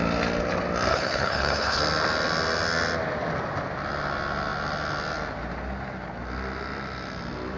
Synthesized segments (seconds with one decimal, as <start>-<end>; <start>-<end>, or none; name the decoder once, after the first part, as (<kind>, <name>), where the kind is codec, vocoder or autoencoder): 0.9-1.8 (codec, HILCodec)